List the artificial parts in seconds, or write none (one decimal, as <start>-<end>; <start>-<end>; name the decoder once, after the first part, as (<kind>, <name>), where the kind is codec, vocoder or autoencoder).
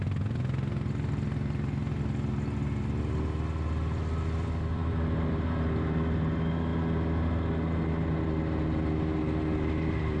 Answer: none